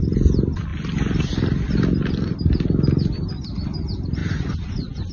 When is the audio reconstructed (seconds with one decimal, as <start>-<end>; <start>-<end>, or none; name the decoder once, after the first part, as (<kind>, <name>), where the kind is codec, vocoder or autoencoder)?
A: 4.2-5.1 (vocoder, Vocos)